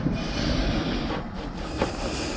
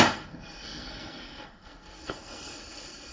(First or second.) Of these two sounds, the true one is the first